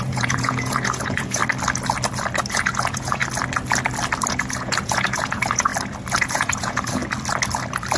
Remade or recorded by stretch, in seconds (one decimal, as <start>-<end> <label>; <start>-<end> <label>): 0.0-1.4 remade; 1.4-2.5 recorded; 2.5-3.2 remade; 3.2-4.3 recorded; 4.3-5.7 remade; 5.7-6.2 recorded; 6.2-7.0 remade; 7.0-8.0 recorded